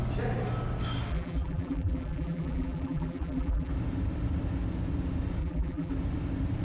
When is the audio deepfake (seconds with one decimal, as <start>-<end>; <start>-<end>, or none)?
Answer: 1.1-3.7; 5.4-5.9